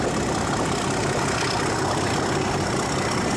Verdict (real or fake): real